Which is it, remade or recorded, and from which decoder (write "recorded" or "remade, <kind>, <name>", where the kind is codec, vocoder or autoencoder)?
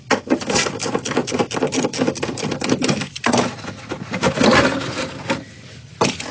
recorded